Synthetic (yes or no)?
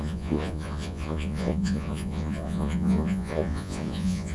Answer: yes